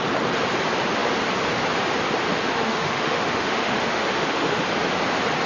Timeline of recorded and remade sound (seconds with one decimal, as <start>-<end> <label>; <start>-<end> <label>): 0.0-2.3 recorded; 2.3-4.6 remade; 4.6-5.5 recorded